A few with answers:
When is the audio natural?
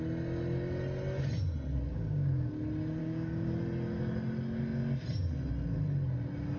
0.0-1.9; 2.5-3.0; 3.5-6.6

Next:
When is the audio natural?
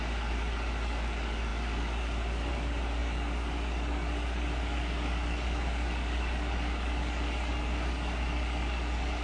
none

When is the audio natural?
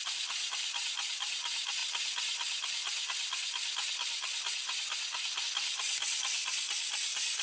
0.0-7.4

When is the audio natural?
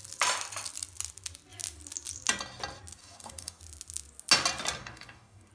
0.0-3.0; 3.6-4.8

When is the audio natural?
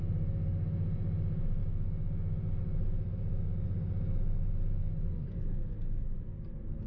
0.0-6.9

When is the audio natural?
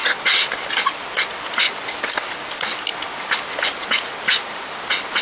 0.0-5.2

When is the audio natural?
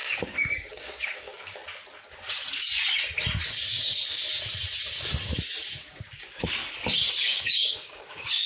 1.6-5.6; 6.6-7.3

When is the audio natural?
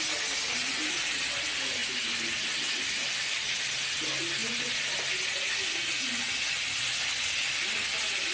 0.0-8.3